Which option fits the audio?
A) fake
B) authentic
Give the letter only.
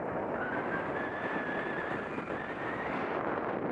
B